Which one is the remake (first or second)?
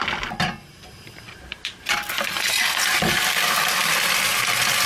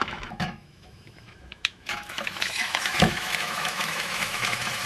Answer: second